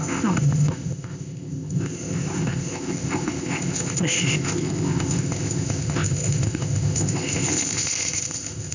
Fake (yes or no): yes